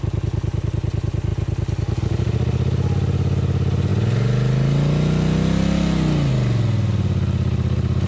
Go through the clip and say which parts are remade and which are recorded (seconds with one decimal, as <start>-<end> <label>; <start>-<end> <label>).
0.0-8.1 recorded